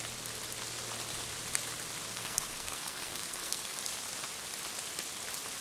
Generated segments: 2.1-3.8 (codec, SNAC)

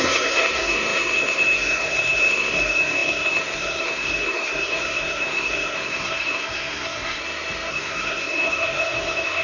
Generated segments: 0.0-7.2 (codec, SNAC); 7.7-9.4